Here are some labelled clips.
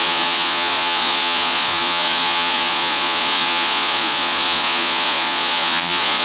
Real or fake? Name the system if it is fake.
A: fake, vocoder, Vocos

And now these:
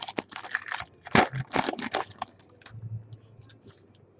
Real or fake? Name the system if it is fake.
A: real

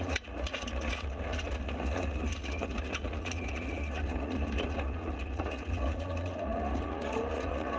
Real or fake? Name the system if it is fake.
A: fake, vocoder, Vocos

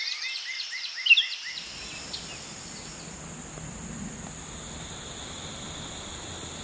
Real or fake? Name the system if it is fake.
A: real